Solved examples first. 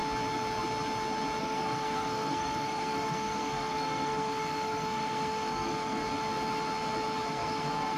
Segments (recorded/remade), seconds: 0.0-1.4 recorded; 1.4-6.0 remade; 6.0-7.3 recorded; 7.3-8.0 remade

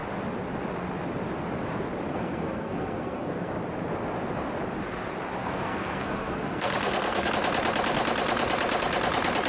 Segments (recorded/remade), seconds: 0.0-2.1 recorded; 2.1-3.5 remade; 3.5-5.4 recorded; 5.4-7.3 remade; 7.3-9.5 recorded

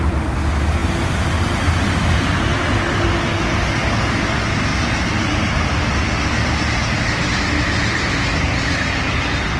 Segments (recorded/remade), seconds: 0.0-9.6 recorded

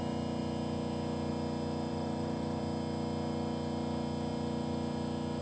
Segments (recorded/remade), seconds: 0.0-1.9 recorded; 1.9-2.6 remade; 2.6-5.4 recorded

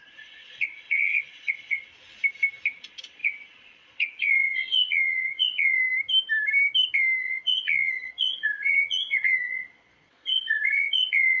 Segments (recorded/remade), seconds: 0.0-1.9 remade; 1.9-2.8 recorded; 2.8-5.8 remade; 5.8-7.2 recorded; 7.2-11.4 remade

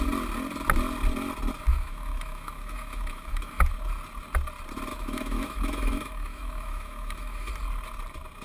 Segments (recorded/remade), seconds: 0.0-1.7 recorded; 1.7-3.7 remade; 3.7-4.9 recorded; 4.9-7.5 remade; 7.5-8.4 recorded

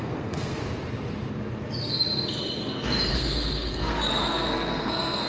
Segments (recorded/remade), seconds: 0.0-0.6 remade; 0.6-3.1 recorded; 3.1-5.3 remade

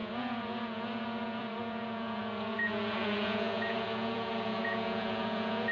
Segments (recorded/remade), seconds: 0.0-5.7 remade